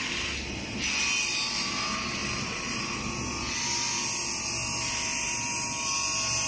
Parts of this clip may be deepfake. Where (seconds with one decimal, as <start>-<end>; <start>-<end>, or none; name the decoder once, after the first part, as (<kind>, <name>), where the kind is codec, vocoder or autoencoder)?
none